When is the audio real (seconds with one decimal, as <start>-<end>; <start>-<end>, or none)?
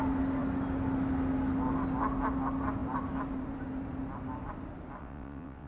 0.0-5.0